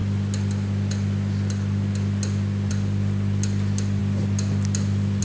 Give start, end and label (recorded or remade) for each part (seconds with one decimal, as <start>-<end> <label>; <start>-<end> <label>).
0.0-5.2 recorded